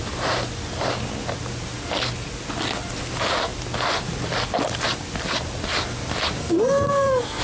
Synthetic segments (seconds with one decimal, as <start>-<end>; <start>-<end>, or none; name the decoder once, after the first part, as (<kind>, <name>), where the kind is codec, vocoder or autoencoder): 6.4-7.4 (codec, SNAC)